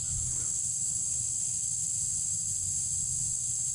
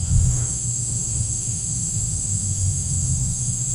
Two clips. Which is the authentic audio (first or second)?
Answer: first